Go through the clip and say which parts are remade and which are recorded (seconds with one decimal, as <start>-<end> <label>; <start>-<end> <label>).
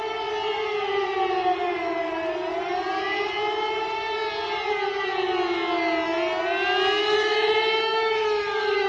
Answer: 0.0-7.0 recorded; 7.0-8.9 remade